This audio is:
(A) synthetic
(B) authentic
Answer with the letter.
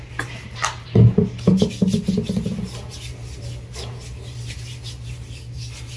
B